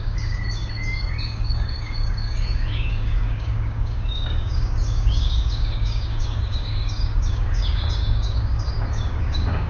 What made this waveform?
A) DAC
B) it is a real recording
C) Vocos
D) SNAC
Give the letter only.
A